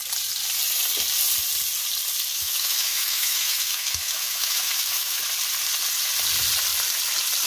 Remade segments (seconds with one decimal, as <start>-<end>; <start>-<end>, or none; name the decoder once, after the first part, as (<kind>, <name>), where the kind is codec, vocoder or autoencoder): 2.3-5.2 (autoencoder, DAC-VAE)